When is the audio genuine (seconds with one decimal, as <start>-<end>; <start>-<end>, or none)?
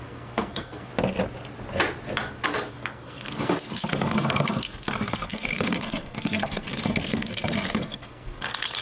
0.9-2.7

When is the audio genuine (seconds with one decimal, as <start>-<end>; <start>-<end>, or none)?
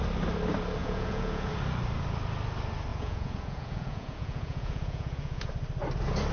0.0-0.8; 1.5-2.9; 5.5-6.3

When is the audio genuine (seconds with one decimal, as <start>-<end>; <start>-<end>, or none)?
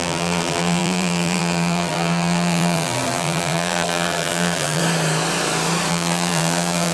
4.8-5.9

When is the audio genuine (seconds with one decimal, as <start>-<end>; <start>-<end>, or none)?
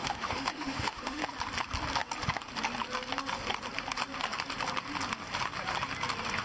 1.2-6.4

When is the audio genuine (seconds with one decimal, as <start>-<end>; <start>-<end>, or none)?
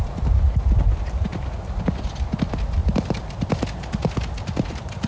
0.0-2.8; 3.6-4.0